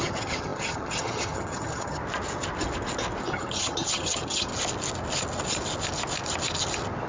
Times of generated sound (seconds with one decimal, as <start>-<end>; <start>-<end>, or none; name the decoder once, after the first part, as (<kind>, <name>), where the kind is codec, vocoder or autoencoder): 0.0-2.0 (vocoder, HiFi-GAN); 3.2-4.5